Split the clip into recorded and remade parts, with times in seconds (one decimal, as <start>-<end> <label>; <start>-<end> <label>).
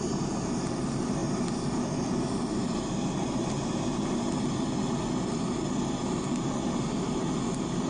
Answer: 0.0-7.9 recorded